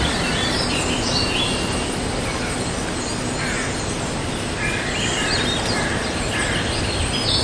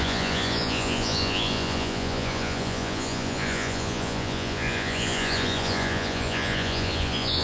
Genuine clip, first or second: first